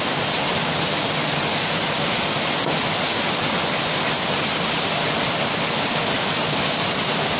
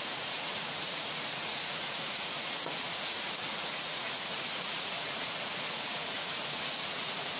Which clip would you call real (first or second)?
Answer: first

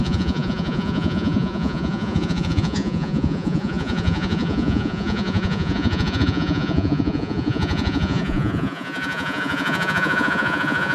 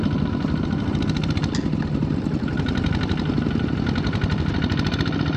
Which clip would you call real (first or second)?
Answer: second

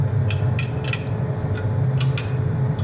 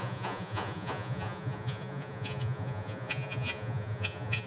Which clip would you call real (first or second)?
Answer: first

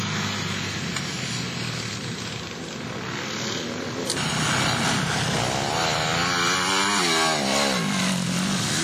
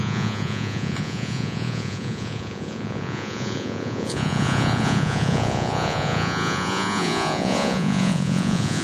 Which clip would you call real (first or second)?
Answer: first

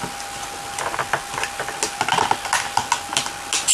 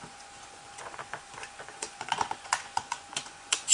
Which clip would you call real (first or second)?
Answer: first